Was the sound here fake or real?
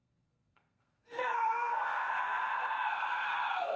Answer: fake